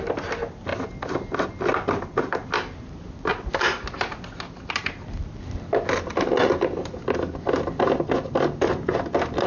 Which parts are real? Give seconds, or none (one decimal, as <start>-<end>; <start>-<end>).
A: 0.0-9.5